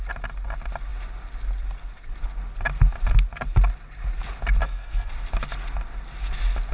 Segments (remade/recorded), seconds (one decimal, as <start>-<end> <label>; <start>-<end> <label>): 0.0-4.6 recorded; 4.6-5.1 remade; 5.1-6.7 recorded